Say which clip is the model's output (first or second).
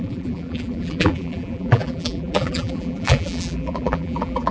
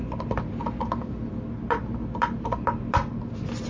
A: first